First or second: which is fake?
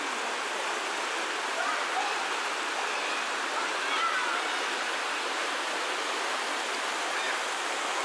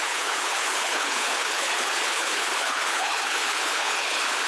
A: second